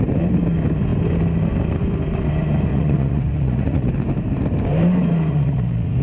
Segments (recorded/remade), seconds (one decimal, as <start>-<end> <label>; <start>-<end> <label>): 0.0-2.7 recorded; 2.7-3.9 remade; 3.9-5.3 recorded; 5.3-6.0 remade